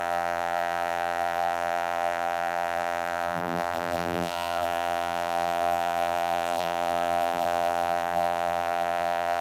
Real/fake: fake